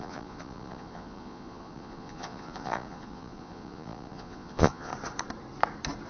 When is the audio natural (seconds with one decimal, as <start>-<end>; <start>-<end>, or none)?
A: 4.9-6.1